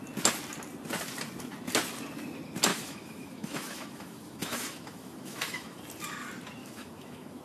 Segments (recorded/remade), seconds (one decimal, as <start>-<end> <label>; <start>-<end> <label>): 0.0-2.7 recorded; 2.7-5.8 remade; 5.8-6.6 recorded; 6.6-7.4 remade